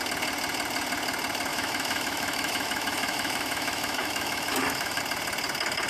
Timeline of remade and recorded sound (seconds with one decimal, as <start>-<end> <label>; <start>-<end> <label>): 0.0-1.5 recorded; 1.5-5.0 remade; 5.0-5.9 recorded